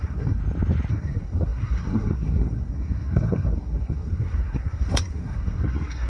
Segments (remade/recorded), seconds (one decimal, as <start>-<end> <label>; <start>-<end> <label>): 0.0-0.4 remade; 0.4-0.9 recorded; 0.9-6.1 remade